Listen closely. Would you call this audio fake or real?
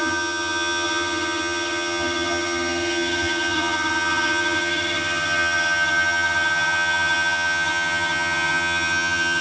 fake